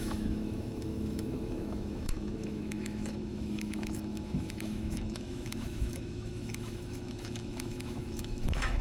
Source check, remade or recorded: remade